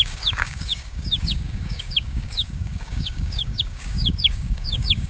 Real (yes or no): no